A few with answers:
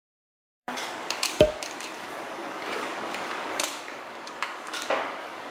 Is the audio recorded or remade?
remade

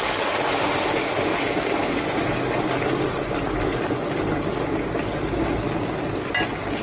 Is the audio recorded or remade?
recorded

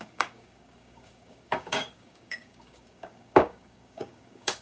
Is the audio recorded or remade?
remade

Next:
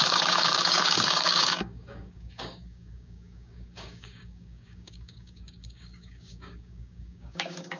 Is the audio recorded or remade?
remade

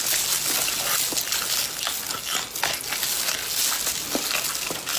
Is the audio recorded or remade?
recorded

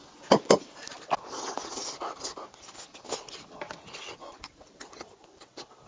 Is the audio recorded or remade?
recorded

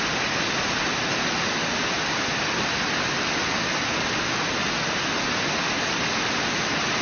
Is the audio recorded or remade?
recorded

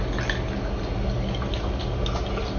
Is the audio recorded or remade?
recorded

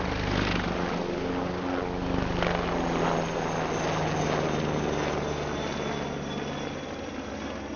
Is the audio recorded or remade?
recorded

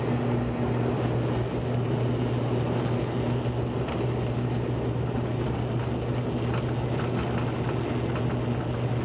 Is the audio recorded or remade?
recorded